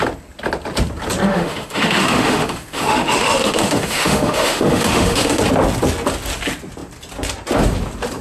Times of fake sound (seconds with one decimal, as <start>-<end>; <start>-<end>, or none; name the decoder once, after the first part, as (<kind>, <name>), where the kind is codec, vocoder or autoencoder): 1.3-5.4 (autoencoder, DAC-VAE)